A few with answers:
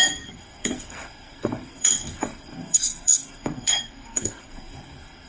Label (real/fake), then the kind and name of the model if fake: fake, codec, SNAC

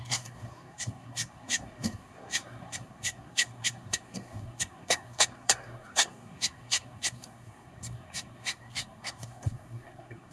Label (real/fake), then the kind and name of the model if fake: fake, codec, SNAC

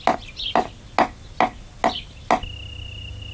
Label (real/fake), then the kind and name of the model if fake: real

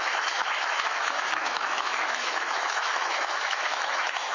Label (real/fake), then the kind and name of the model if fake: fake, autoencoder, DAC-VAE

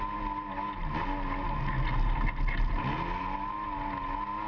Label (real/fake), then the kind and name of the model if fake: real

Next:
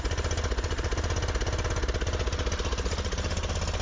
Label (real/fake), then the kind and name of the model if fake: real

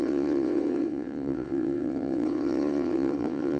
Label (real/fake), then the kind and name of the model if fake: fake, vocoder, WaveNeXt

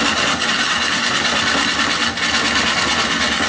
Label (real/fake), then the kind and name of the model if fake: real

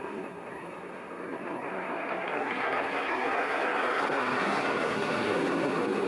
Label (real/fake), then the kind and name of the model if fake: fake, codec, SNAC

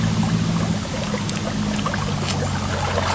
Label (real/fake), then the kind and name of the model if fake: real